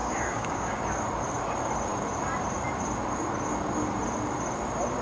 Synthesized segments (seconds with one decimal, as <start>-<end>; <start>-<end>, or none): 0.0-0.8